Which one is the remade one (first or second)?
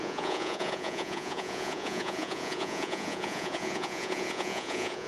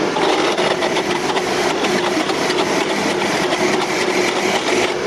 first